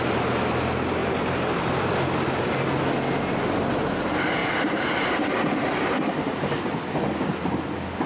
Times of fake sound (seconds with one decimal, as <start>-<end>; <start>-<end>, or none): 1.0-1.9; 4.4-6.6